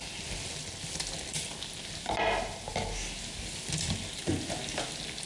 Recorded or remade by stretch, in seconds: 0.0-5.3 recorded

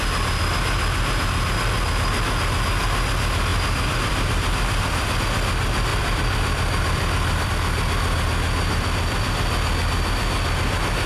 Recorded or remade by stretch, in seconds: 0.0-3.5 recorded; 3.5-5.2 remade; 5.2-5.9 recorded; 5.9-7.5 remade; 7.5-11.1 recorded

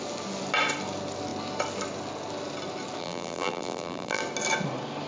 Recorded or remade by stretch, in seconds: 0.0-3.0 recorded; 3.0-4.2 remade; 4.2-5.1 recorded